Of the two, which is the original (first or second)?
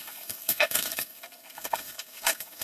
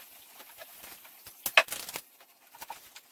second